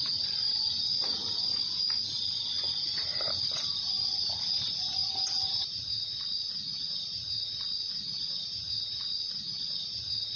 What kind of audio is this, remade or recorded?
recorded